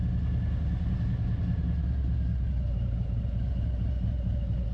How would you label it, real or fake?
real